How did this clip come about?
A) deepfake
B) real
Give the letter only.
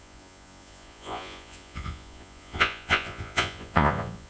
A